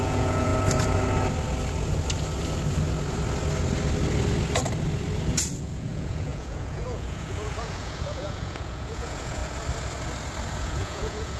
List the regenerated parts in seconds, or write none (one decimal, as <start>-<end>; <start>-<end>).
0.0-0.5; 5.6-9.4; 10.5-11.4